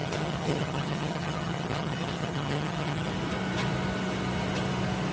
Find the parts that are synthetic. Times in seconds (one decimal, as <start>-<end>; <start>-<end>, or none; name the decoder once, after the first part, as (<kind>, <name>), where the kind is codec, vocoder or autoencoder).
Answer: 0.0-3.1 (vocoder, HiFi-GAN)